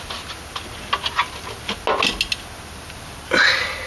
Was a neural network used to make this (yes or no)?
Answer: no